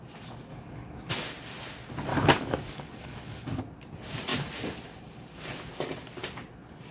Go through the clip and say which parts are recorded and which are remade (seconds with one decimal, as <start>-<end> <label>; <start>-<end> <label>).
0.0-0.5 recorded; 0.5-1.1 remade; 1.1-2.1 recorded; 2.1-3.6 remade; 3.6-6.9 recorded